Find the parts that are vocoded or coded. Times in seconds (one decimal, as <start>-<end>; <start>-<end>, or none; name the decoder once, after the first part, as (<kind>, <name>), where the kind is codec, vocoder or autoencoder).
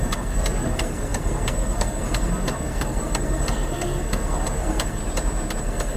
0.0-5.0 (codec, SNAC); 5.6-6.0